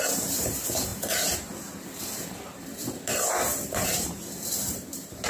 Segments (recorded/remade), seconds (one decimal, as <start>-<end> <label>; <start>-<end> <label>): 0.0-5.3 remade